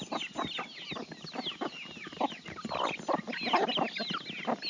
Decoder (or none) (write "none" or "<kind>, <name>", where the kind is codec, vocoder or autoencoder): none